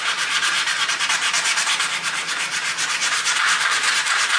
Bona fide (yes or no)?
no